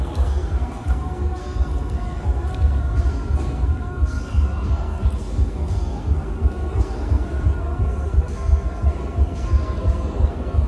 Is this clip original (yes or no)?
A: no